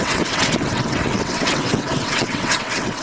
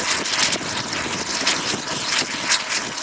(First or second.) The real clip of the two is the second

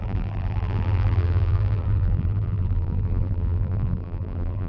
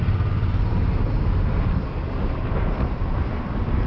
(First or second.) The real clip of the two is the second